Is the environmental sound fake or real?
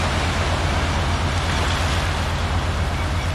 real